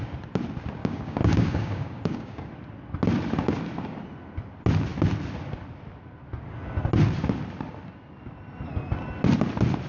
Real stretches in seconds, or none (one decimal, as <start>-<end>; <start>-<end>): 0.0-0.8; 2.5-9.9